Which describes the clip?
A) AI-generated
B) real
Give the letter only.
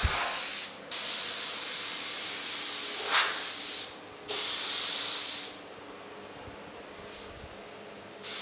B